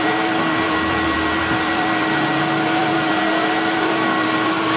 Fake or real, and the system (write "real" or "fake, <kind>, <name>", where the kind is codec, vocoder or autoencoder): fake, vocoder, BigVGAN v2